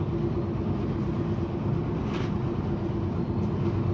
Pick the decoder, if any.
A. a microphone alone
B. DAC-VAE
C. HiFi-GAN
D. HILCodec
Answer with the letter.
A